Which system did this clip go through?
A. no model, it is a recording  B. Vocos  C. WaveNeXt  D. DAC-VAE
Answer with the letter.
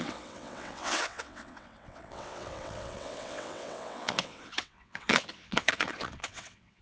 C